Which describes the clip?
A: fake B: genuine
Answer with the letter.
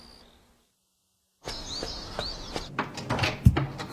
B